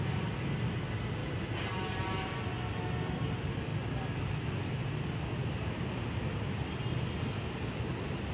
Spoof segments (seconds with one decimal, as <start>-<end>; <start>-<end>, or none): none